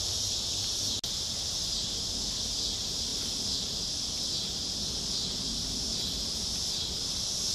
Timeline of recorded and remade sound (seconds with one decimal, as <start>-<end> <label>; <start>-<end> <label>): 0.0-7.5 recorded

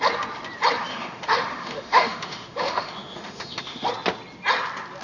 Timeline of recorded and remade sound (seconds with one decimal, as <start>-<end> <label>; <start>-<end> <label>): 0.0-0.9 recorded; 0.9-3.9 remade; 3.9-5.0 recorded

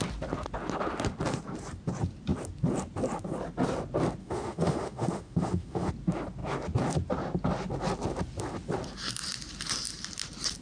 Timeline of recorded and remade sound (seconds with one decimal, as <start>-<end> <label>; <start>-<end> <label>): 0.0-4.2 recorded; 4.2-5.9 remade; 5.9-10.6 recorded

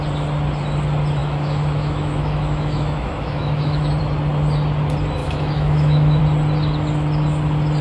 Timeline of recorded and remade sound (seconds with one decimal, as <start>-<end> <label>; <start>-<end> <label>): 0.0-1.2 recorded; 1.2-4.0 remade; 4.0-5.2 recorded; 5.2-6.2 remade; 6.2-7.8 recorded

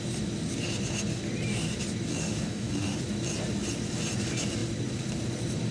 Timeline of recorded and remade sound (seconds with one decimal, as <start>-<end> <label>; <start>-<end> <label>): 0.0-2.1 recorded; 2.1-3.0 remade; 3.0-5.7 recorded

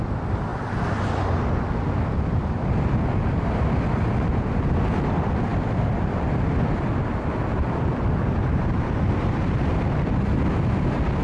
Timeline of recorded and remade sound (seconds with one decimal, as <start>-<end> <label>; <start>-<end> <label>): 0.0-11.2 recorded